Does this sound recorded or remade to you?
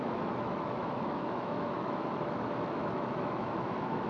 remade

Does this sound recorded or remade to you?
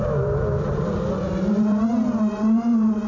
recorded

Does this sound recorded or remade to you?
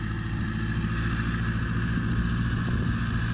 recorded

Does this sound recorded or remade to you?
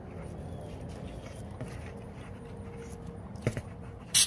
recorded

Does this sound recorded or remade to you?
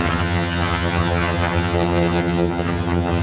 remade